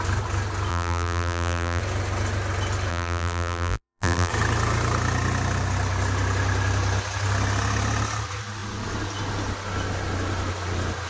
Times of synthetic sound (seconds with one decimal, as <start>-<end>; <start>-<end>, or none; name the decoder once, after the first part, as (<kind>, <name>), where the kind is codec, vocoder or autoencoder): 0.7-1.8 (vocoder, BigVGAN v2); 2.9-4.3